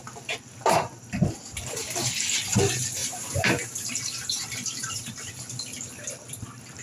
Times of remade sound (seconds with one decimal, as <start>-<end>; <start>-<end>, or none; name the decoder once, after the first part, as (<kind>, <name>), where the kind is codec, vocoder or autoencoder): 3.0-5.3 (vocoder, BigVGAN v2)